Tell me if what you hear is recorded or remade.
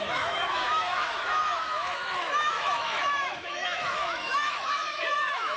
remade